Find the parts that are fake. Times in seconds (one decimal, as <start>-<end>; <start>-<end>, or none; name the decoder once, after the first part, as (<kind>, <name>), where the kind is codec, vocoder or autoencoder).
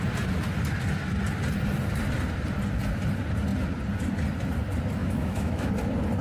5.0-5.7 (autoencoder, DAC-VAE)